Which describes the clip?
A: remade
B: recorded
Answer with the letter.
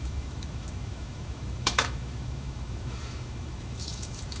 A